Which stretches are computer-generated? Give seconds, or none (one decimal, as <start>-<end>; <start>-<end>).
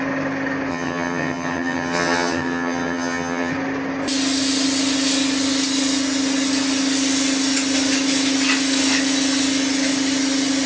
0.7-3.5